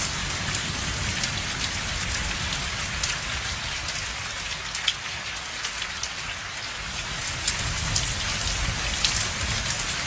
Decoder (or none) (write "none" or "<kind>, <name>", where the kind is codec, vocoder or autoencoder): none